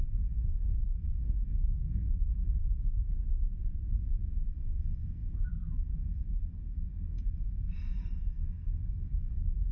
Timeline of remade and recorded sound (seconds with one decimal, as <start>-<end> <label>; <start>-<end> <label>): 0.0-3.0 remade; 3.0-3.9 recorded; 3.9-9.7 remade